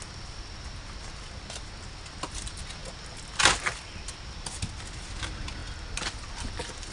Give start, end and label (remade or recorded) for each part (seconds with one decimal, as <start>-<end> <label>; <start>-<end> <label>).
0.0-6.9 recorded

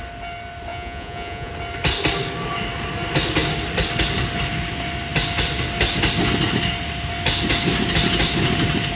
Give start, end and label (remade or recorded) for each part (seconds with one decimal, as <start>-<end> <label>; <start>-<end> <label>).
0.0-0.7 recorded; 0.7-1.5 remade; 1.5-8.9 recorded

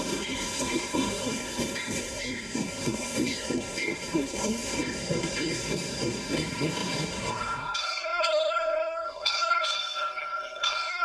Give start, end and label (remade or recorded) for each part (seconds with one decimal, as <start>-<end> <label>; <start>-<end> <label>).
0.0-11.0 remade

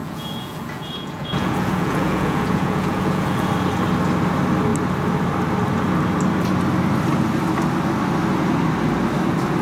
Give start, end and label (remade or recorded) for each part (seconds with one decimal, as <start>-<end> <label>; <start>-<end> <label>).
0.0-3.5 remade; 3.5-9.6 recorded

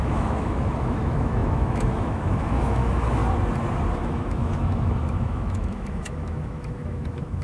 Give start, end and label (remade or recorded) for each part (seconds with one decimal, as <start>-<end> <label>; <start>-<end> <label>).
0.0-3.2 remade; 3.2-3.9 recorded; 3.9-7.4 remade

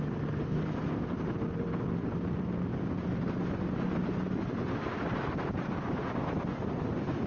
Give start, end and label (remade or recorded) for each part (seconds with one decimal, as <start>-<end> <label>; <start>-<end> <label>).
0.0-7.3 recorded

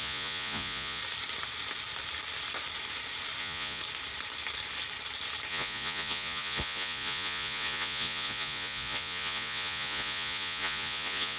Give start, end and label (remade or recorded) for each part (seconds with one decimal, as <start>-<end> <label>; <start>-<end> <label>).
0.0-1.0 remade; 1.0-3.4 recorded; 3.4-3.8 remade; 3.8-5.5 recorded; 5.5-11.4 remade

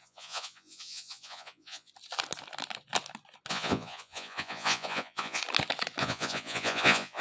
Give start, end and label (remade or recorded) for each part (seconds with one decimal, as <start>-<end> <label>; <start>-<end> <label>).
0.0-1.9 remade; 1.9-3.5 recorded; 3.5-5.4 remade; 5.4-6.0 recorded; 6.0-7.2 remade